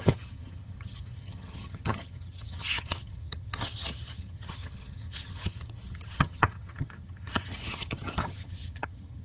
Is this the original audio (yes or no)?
no